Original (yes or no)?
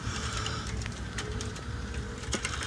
no